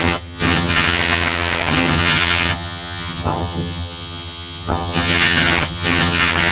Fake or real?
fake